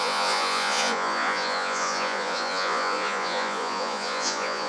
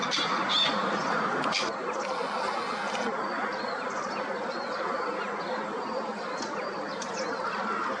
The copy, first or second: first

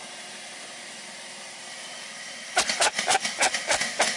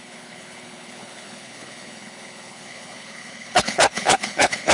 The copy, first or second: second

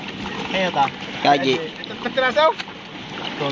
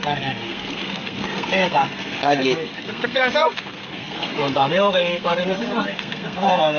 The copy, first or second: second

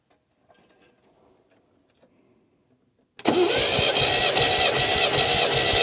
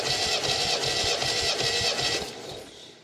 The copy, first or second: second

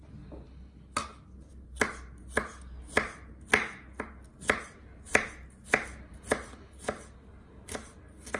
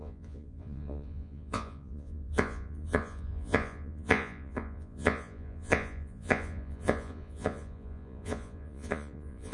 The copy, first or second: second